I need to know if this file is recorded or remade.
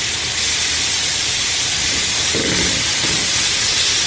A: recorded